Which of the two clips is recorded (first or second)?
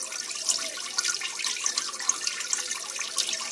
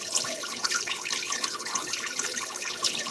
first